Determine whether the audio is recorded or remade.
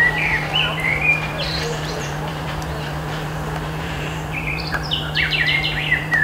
remade